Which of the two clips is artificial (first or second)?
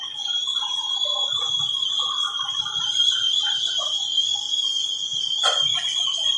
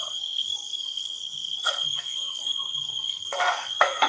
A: second